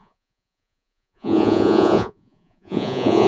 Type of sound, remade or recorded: remade